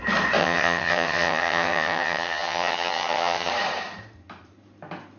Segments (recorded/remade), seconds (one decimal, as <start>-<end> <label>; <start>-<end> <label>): 0.0-0.4 recorded; 0.4-3.5 remade; 3.5-5.2 recorded